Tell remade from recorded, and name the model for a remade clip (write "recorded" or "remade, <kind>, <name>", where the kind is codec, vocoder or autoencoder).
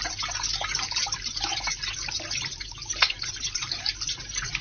remade, vocoder, BigVGAN v2